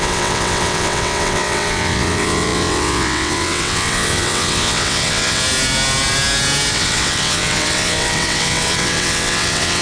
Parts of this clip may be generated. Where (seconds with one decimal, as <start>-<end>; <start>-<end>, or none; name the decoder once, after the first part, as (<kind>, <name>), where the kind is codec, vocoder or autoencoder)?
0.0-5.4 (vocoder, WaveNeXt); 6.7-9.8